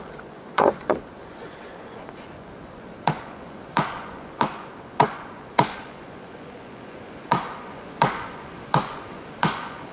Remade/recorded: remade